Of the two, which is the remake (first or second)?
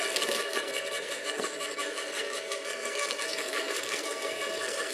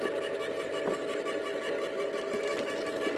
first